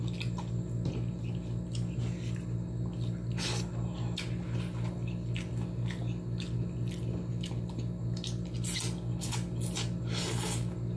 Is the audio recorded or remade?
recorded